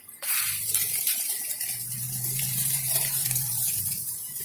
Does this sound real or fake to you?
fake